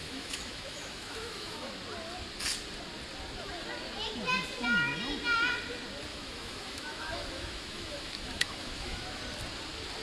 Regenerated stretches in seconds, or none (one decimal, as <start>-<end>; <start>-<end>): 0.0-1.7; 6.1-9.2